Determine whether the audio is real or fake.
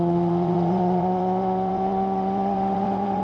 fake